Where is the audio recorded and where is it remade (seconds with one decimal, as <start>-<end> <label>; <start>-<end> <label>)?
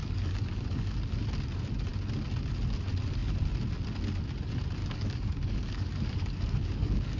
0.0-0.9 remade; 0.9-4.8 recorded; 4.8-7.2 remade